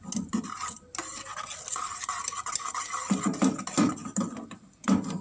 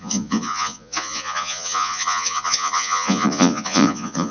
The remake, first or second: second